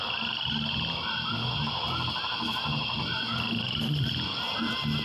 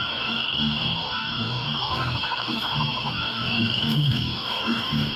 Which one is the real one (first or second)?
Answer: first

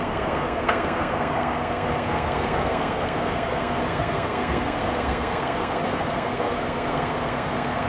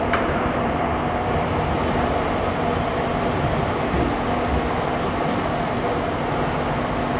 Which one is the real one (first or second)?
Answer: second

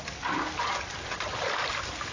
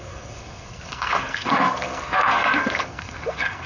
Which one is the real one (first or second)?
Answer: first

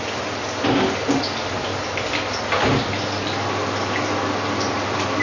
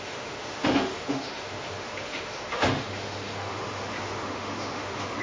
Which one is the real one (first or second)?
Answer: first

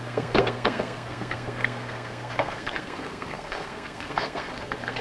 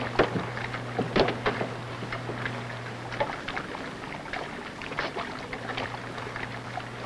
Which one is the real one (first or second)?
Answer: second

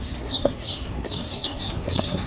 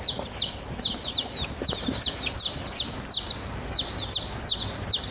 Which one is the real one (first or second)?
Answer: second